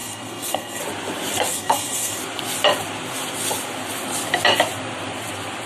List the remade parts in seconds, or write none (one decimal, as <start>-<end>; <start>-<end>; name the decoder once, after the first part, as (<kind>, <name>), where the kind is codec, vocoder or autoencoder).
0.0-0.8 (codec, SNAC); 1.5-2.2